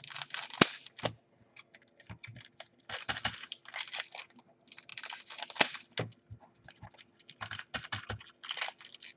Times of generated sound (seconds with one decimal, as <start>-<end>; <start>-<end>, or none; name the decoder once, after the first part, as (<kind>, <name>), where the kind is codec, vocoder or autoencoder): none